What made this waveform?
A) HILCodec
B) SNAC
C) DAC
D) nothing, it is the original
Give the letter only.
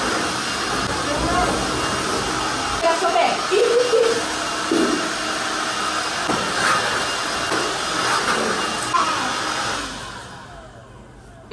D